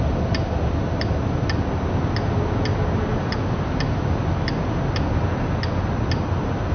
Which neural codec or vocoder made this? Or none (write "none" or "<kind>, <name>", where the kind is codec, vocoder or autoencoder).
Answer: none